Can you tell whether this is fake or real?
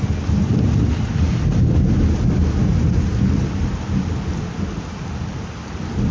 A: real